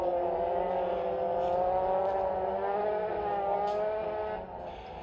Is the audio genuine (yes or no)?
yes